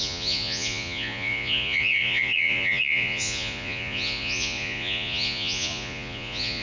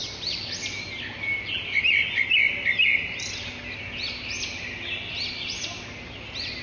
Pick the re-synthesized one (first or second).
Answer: first